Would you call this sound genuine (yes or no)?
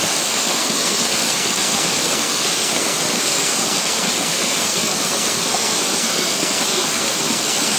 no